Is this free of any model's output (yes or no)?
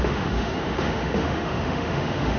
no